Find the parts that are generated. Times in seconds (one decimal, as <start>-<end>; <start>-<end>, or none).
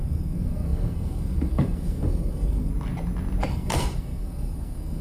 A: 0.0-2.7; 3.5-5.0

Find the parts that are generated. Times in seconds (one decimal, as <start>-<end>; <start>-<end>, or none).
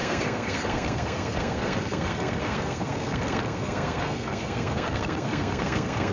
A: 0.0-6.1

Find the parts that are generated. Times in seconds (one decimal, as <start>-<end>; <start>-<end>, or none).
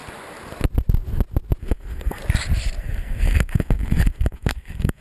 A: 1.6-2.2; 2.8-5.0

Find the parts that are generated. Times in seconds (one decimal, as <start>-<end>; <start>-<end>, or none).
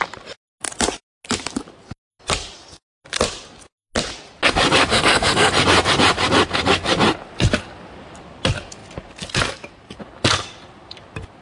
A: 4.9-5.5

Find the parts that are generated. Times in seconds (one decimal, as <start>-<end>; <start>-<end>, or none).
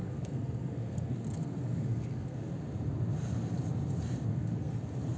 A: 0.0-2.5; 4.3-4.8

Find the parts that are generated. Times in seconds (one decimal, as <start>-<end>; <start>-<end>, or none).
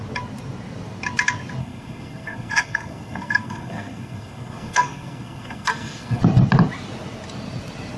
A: 1.6-6.2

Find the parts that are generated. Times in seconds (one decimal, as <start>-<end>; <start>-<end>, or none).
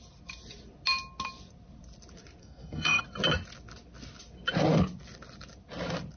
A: 2.4-3.0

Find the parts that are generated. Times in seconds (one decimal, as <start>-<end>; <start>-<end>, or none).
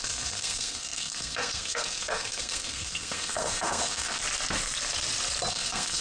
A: 0.0-4.2; 5.5-6.0